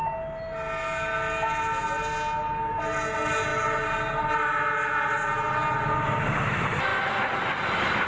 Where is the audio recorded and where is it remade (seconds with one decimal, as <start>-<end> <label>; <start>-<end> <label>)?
0.0-8.1 recorded